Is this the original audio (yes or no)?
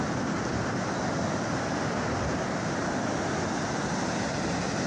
yes